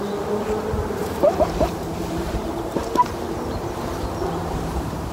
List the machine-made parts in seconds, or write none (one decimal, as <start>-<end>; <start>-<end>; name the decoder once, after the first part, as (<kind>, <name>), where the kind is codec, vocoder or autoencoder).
1.0-4.1 (vocoder, BigVGAN v2)